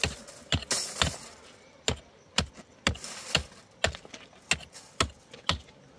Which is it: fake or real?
real